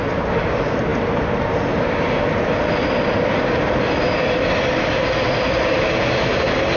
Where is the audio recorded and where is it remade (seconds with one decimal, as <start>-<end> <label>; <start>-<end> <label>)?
0.0-6.8 recorded